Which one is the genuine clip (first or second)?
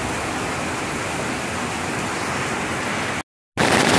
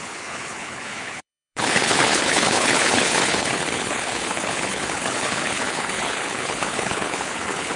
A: first